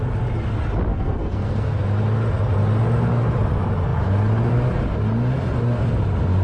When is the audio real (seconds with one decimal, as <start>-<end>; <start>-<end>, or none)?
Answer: 0.0-0.9; 1.8-6.4